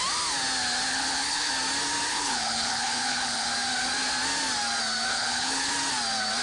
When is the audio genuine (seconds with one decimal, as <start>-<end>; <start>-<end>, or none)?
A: 0.0-0.9; 1.5-2.1; 3.5-5.1; 5.7-6.4